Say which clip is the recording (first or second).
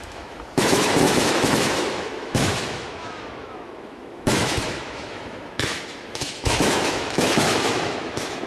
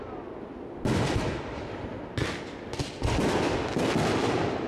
second